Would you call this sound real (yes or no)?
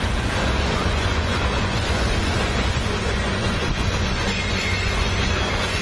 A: no